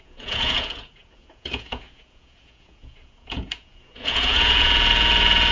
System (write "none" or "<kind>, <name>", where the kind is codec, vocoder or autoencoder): vocoder, Vocos